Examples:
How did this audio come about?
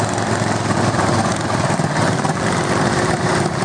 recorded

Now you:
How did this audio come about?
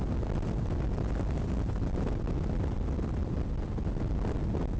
recorded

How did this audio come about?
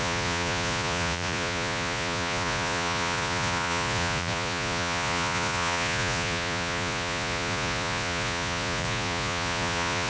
remade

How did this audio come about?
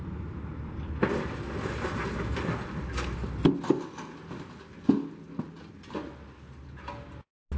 recorded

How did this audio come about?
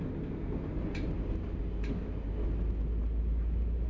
recorded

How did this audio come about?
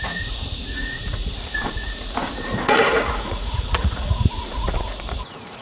remade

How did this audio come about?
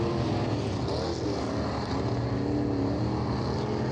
recorded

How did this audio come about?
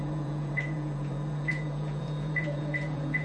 remade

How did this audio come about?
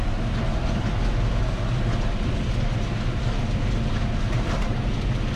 recorded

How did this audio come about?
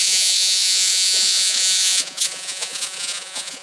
remade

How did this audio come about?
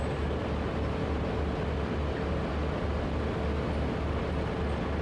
recorded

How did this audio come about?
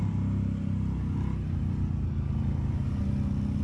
recorded